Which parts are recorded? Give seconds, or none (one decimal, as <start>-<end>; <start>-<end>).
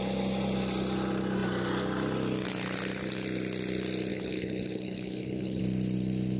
0.0-4.1; 5.6-6.4